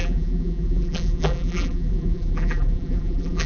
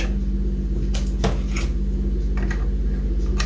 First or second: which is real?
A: second